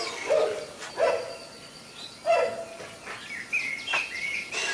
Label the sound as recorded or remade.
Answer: recorded